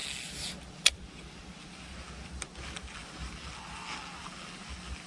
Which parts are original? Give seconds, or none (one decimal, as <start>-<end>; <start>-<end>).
0.0-5.1